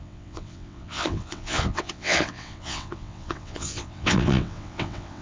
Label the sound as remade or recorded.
remade